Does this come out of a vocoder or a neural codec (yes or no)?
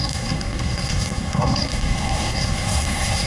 yes